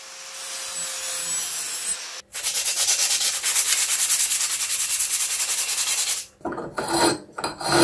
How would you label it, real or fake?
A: real